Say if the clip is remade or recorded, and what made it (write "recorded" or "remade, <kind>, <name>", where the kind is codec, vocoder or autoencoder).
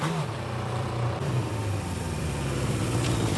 remade, vocoder, BigVGAN v2